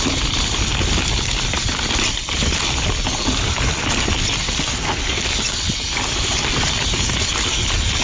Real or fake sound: real